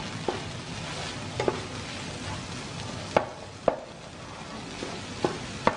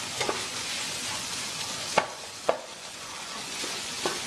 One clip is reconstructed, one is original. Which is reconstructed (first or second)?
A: second